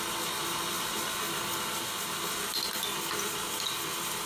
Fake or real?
real